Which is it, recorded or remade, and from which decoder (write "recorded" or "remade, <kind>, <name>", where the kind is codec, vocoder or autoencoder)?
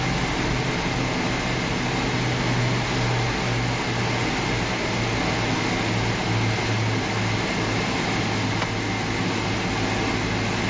recorded